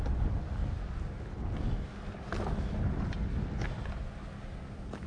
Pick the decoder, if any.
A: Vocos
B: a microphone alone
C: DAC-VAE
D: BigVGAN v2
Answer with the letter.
B